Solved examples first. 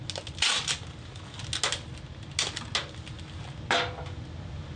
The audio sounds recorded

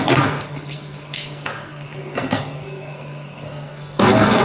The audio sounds remade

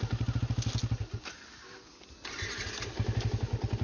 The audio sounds recorded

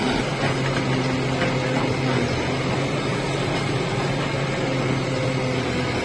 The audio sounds recorded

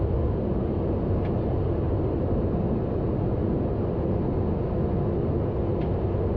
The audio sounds recorded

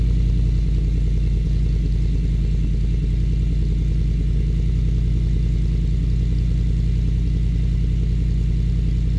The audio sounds recorded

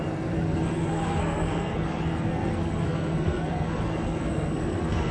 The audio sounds remade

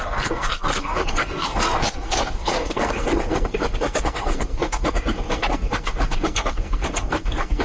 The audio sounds remade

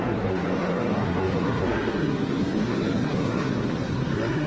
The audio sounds remade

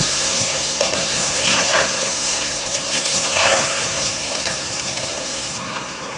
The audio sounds remade